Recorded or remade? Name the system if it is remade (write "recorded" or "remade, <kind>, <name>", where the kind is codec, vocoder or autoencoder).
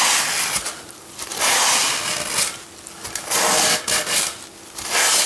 recorded